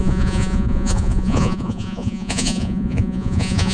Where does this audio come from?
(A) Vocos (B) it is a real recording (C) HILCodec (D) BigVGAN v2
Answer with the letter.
A